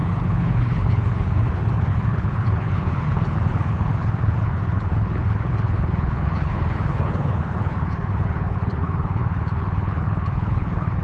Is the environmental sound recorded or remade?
remade